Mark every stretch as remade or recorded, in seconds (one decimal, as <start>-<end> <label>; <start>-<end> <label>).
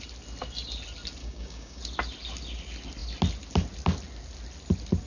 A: 0.0-1.2 recorded; 1.2-1.8 remade; 1.8-5.1 recorded